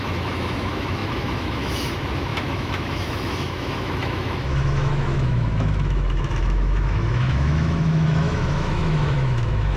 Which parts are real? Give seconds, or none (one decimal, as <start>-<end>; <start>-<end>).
none